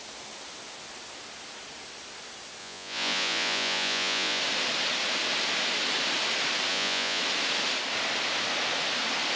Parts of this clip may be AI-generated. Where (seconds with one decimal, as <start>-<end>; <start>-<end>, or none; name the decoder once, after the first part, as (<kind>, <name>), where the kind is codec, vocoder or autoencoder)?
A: 2.6-4.4 (vocoder, Vocos); 6.7-7.2